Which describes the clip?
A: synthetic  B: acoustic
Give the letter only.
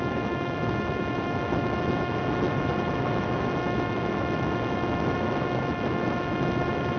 A